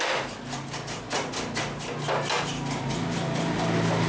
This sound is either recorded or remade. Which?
recorded